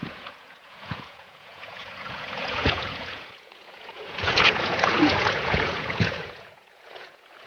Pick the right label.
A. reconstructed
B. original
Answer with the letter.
A